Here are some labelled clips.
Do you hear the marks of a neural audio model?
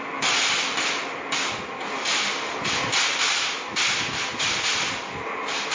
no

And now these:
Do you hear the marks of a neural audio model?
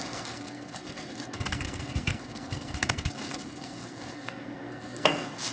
yes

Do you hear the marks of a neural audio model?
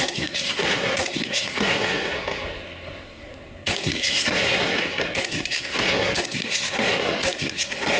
yes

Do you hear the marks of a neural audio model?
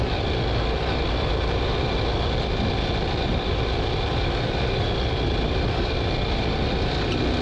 no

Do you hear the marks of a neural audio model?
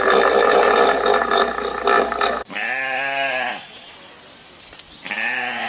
no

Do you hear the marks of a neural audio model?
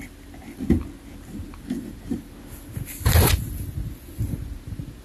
no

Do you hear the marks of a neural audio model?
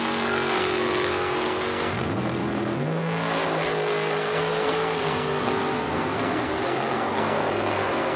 yes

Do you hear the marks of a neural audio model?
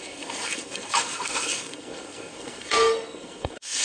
yes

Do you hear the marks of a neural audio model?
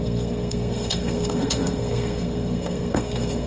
yes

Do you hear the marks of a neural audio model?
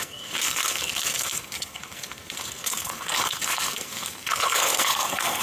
yes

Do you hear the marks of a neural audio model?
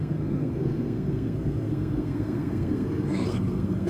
yes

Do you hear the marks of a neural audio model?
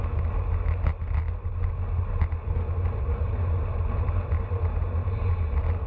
no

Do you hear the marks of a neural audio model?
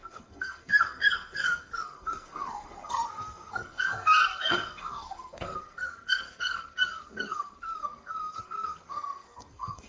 yes